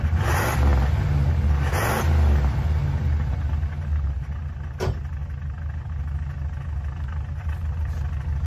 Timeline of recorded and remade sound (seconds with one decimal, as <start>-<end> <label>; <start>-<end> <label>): 0.0-2.8 recorded; 2.8-3.3 remade; 3.3-8.5 recorded